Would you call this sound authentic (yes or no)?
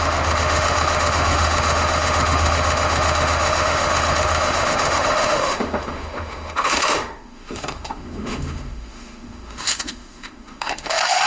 no